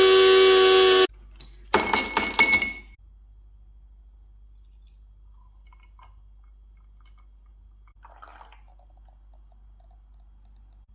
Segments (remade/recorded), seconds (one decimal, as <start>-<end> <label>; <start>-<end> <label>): 0.0-10.9 recorded